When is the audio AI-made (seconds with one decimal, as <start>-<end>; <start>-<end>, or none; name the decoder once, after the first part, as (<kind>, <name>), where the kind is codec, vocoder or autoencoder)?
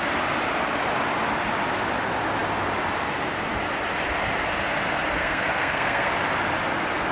5.2-6.1 (codec, SNAC)